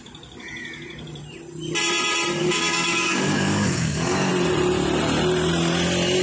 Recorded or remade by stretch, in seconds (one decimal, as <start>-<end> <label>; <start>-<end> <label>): 0.0-2.4 recorded; 2.4-4.3 remade; 4.3-6.2 recorded